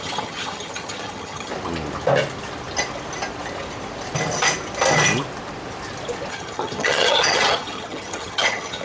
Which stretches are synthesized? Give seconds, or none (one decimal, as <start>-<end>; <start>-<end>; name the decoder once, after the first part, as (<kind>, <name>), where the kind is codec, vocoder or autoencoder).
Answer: 0.0-1.5 (vocoder, HiFi-GAN); 6.3-8.8